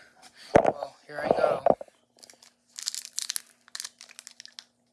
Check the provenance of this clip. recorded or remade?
recorded